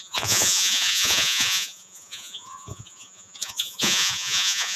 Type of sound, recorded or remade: remade